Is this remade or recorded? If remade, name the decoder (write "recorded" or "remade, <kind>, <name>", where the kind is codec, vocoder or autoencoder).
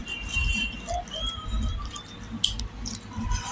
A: recorded